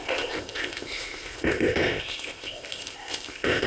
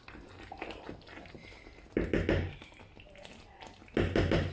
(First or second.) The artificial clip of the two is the first